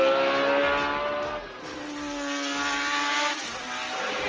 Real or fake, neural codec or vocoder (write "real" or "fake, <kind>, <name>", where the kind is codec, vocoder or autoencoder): real